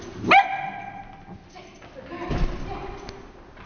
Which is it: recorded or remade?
recorded